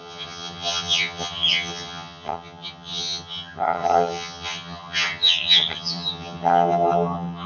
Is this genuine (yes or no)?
no